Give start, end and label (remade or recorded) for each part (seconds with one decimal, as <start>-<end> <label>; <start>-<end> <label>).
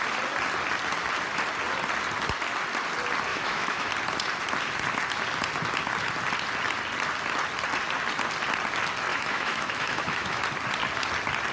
0.0-3.3 recorded; 3.3-3.9 remade; 3.9-9.1 recorded; 9.1-10.4 remade; 10.4-11.5 recorded